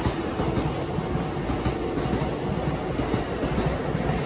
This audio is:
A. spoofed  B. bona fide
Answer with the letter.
B